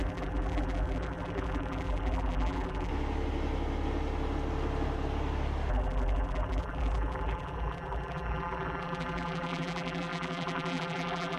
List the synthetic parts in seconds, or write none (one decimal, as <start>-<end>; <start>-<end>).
0.0-2.9; 5.7-11.4